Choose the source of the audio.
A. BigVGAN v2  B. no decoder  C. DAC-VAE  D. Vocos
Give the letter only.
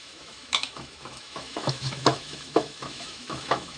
C